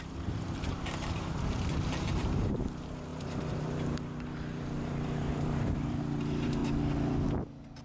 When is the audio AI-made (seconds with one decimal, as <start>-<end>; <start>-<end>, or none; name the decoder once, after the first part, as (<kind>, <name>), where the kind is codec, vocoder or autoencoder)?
0.0-6.6 (vocoder, BigVGAN v2)